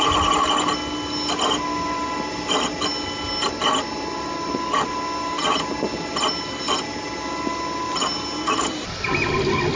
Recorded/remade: recorded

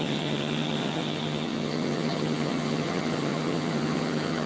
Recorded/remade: remade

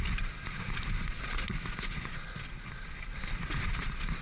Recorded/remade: recorded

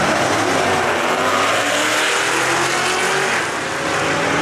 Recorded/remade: recorded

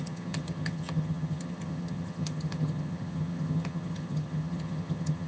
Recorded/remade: remade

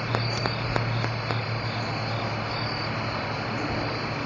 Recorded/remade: recorded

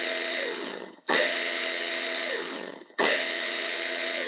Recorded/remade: remade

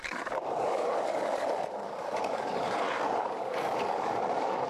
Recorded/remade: remade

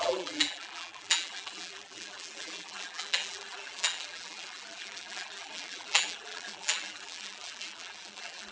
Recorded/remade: remade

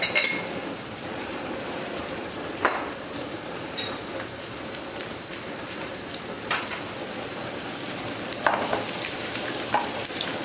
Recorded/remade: remade